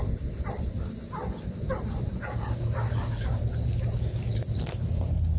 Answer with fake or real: real